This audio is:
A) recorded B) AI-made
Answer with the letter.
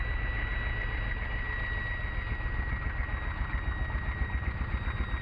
A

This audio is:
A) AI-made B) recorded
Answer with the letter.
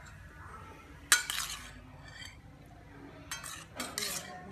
B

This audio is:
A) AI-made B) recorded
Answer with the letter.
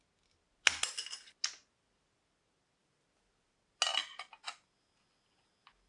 B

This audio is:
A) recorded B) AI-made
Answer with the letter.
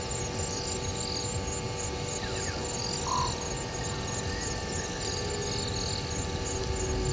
A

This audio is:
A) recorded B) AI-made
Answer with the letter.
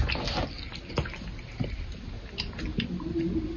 A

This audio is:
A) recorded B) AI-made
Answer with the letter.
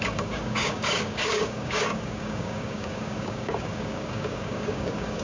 B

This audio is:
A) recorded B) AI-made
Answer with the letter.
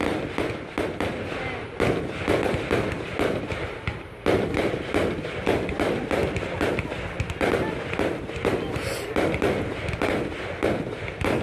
A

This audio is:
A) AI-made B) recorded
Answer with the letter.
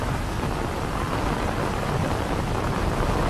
B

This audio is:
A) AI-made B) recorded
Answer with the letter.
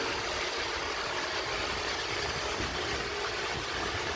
B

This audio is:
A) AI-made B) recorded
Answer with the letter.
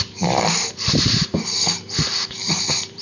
A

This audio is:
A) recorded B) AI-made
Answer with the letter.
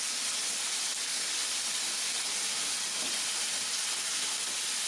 A